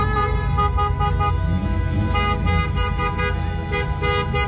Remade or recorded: recorded